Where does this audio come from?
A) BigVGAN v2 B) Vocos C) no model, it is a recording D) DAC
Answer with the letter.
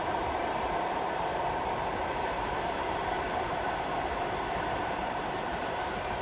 A